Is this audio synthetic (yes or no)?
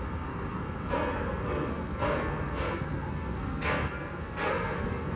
yes